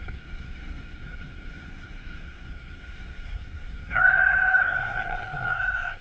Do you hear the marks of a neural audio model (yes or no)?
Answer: yes